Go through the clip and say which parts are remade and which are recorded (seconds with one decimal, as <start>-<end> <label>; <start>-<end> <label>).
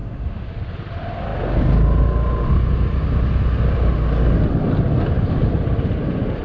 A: 0.0-0.5 remade; 0.5-6.4 recorded